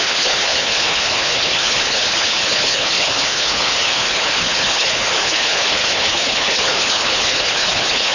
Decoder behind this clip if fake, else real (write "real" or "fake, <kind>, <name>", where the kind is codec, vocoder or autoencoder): fake, codec, HILCodec